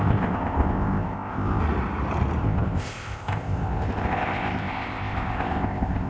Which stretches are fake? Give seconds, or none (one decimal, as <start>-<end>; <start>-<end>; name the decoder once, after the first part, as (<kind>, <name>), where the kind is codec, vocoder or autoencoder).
0.0-1.6 (codec, ZipCodec); 2.4-6.1